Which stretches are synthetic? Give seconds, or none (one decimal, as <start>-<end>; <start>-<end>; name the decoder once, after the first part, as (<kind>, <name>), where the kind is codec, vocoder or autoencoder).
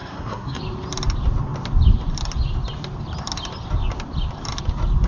0.0-0.6 (codec, SNAC)